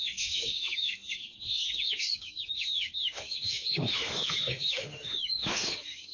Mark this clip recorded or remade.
remade